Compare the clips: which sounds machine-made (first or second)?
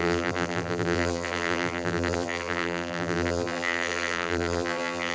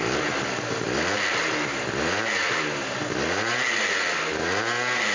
first